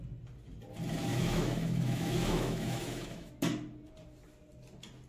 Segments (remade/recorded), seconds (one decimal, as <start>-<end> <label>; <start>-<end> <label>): 0.0-1.1 recorded; 1.1-3.3 remade; 3.3-5.1 recorded